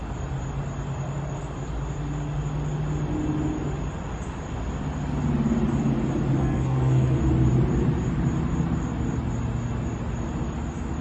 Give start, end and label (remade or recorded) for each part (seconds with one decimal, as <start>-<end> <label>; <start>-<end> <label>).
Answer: 0.0-6.4 recorded; 6.4-7.2 remade; 7.2-11.0 recorded

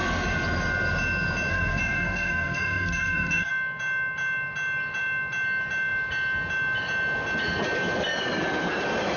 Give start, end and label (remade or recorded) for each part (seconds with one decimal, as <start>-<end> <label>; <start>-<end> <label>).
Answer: 0.0-1.5 recorded; 1.5-3.5 remade; 3.5-9.2 recorded

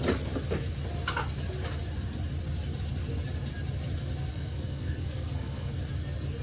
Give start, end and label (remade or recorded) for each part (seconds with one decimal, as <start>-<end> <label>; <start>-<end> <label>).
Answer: 0.0-4.3 recorded; 4.3-5.7 remade; 5.7-6.4 recorded

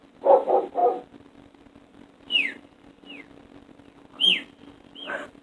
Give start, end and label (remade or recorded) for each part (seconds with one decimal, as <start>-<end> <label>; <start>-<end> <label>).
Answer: 0.0-5.4 recorded